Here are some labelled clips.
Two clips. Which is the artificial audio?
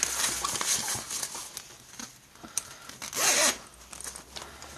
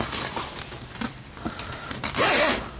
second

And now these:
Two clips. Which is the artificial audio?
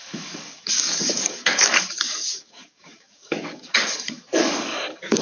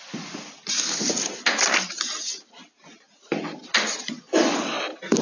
first